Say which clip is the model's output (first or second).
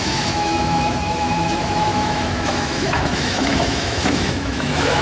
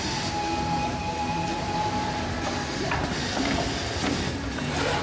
first